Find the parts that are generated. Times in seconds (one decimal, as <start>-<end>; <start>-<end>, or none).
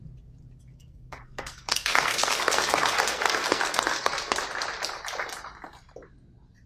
0.7-4.4